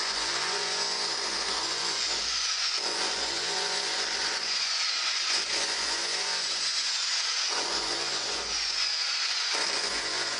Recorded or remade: remade